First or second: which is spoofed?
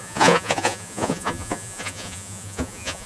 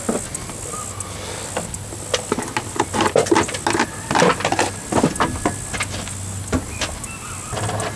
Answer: first